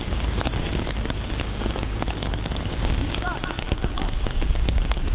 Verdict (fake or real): fake